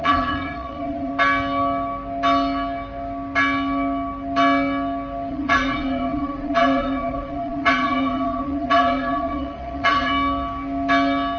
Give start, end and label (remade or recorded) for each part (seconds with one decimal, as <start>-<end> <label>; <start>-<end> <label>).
0.0-1.1 remade; 1.1-5.3 recorded; 5.3-10.1 remade; 10.1-11.4 recorded